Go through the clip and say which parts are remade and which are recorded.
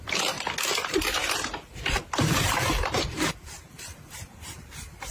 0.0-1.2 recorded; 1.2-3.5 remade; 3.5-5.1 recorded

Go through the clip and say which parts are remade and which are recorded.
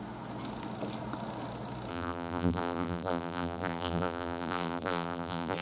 0.0-1.9 recorded; 1.9-5.6 remade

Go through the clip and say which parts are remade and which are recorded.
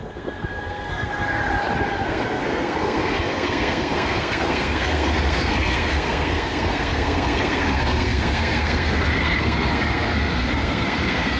0.0-1.4 remade; 1.4-2.0 recorded; 2.0-11.4 remade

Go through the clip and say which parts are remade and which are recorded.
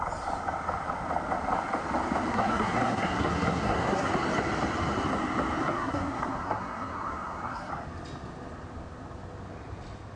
0.0-2.3 recorded; 2.3-4.1 remade; 4.1-5.6 recorded; 5.6-7.7 remade; 7.7-10.2 recorded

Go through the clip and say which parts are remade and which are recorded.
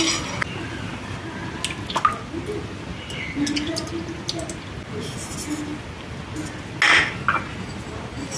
0.0-8.4 recorded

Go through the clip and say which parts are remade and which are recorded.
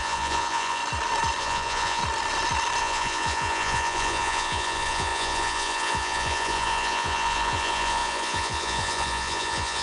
0.0-0.8 remade; 0.8-1.4 recorded; 1.4-2.0 remade; 2.0-2.8 recorded; 2.8-9.8 remade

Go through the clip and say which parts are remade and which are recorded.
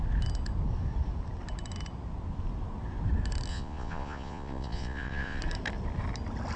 0.0-3.5 recorded; 3.5-5.4 remade; 5.4-6.6 recorded